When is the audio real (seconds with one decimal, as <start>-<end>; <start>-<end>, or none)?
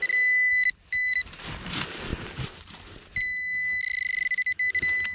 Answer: 0.0-2.1; 3.1-5.1